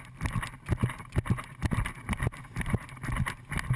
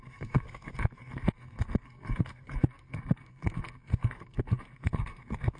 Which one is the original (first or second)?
first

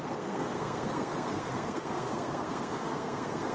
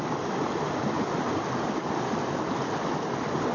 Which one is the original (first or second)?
second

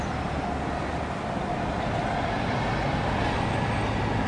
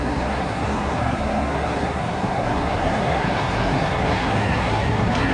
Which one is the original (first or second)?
first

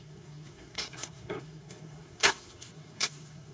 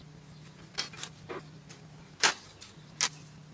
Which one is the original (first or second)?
second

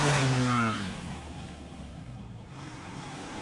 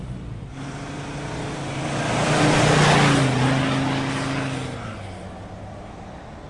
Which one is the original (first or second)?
second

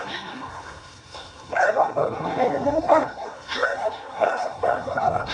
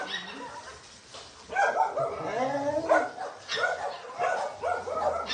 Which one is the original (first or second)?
second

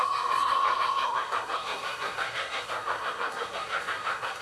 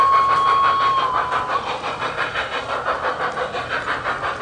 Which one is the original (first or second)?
second